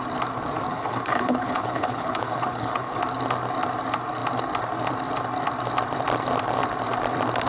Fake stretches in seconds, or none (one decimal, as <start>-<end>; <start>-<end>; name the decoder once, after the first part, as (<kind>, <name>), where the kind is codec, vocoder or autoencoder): 0.7-3.0 (codec, HILCodec)